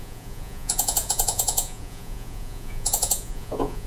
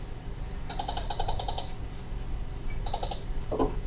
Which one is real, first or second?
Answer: second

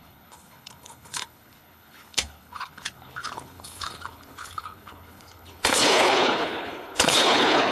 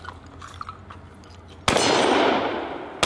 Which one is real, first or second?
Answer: second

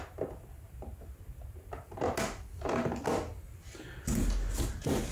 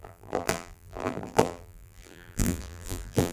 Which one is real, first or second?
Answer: first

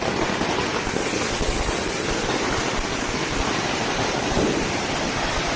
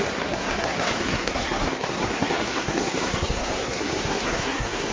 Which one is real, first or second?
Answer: first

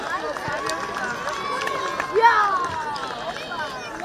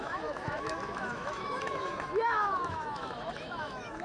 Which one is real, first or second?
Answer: first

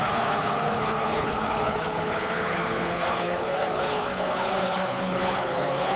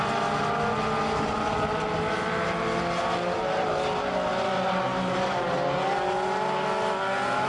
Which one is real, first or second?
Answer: second